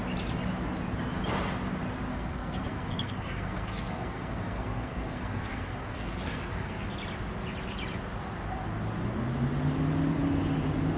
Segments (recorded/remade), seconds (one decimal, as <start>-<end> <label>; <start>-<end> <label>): 0.0-2.1 recorded; 2.1-6.9 remade; 6.9-11.0 recorded